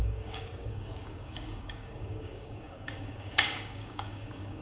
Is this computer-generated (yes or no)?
yes